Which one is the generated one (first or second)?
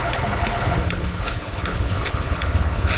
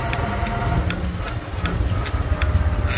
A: first